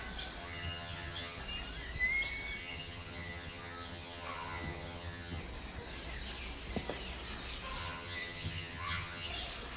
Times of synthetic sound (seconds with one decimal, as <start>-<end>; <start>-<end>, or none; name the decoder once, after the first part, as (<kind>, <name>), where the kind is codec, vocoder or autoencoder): 0.4-1.4 (vocoder, HiFi-GAN); 2.6-5.4; 7.8-9.3